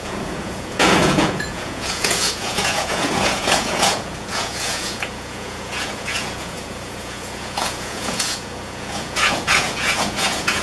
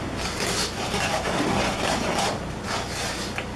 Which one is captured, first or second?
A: second